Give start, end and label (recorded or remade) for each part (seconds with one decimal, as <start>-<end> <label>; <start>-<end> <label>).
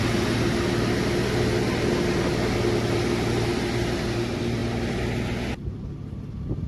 0.0-6.7 recorded